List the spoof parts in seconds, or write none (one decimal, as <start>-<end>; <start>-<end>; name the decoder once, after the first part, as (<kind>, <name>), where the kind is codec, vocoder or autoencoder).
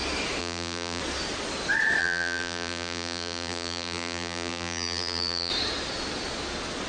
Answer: 0.4-1.0 (vocoder, BigVGAN v2); 2.0-5.5